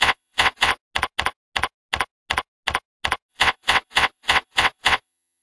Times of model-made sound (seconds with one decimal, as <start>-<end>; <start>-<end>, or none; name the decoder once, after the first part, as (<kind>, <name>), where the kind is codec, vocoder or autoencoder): 0.0-0.7 (vocoder, WaveNeXt); 3.3-5.4